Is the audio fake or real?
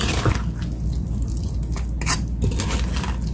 real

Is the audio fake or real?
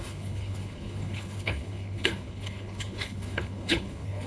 fake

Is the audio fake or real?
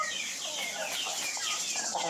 real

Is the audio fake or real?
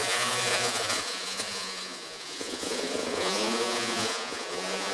fake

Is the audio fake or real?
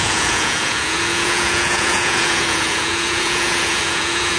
fake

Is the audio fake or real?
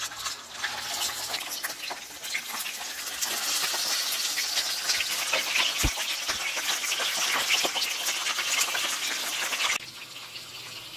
real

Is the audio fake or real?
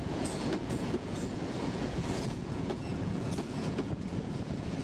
fake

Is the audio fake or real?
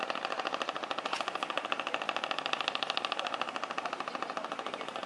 real